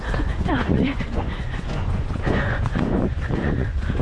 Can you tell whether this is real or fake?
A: fake